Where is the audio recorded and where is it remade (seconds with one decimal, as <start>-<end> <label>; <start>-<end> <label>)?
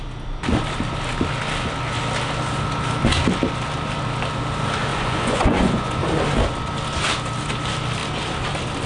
0.0-4.9 recorded; 4.9-6.0 remade; 6.0-8.9 recorded